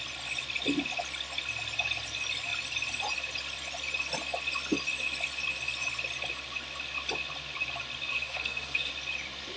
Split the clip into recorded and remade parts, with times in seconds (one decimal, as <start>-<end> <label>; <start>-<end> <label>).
0.0-8.1 recorded; 8.1-8.9 remade; 8.9-9.6 recorded